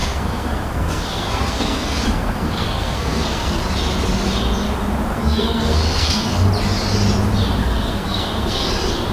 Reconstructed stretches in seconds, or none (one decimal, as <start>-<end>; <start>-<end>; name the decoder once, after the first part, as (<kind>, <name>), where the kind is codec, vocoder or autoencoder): 0.0-3.6 (codec, SNAC); 5.1-6.5; 7.6-8.7